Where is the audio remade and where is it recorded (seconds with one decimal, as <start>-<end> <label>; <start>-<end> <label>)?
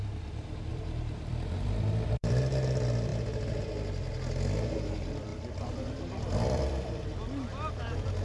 0.0-0.7 recorded; 0.7-2.4 remade; 2.4-5.3 recorded; 5.3-7.7 remade; 7.7-8.2 recorded